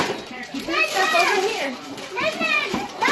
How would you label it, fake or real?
fake